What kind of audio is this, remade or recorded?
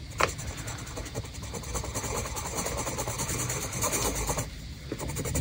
recorded